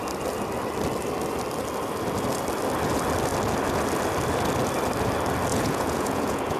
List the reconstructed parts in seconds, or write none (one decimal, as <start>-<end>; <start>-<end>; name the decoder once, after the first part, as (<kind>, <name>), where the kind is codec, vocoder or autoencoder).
5.5-6.6 (vocoder, Vocos)

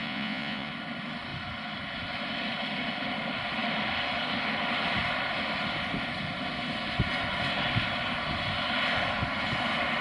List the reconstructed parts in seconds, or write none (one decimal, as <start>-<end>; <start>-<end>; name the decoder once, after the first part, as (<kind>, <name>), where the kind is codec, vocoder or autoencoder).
0.0-0.7 (vocoder, Vocos)

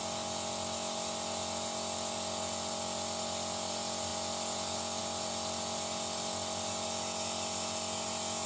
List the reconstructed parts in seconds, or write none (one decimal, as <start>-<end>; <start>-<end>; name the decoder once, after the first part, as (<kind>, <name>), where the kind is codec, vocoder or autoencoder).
none

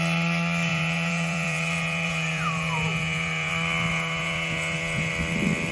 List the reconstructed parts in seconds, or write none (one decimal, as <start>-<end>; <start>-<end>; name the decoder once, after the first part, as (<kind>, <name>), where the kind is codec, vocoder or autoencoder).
0.7-3.5 (vocoder, Vocos); 3.9-5.1

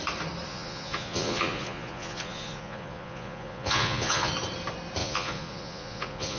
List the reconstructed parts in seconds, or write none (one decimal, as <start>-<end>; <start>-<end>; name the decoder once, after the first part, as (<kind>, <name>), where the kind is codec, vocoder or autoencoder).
0.5-4.3 (vocoder, Vocos); 5.0-6.4

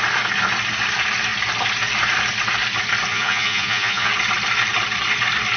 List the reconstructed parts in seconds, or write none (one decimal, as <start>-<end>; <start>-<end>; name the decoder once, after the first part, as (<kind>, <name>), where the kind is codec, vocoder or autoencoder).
3.1-4.1 (vocoder, Vocos)

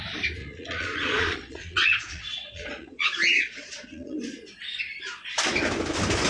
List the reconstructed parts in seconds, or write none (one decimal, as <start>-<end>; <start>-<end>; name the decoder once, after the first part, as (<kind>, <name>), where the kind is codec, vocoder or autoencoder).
0.4-4.2 (vocoder, Vocos)